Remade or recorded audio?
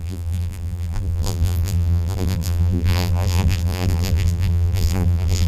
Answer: remade